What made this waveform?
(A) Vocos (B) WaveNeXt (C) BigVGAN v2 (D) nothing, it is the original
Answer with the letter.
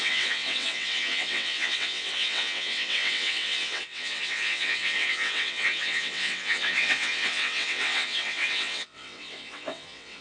B